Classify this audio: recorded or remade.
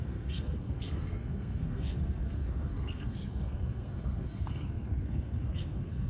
remade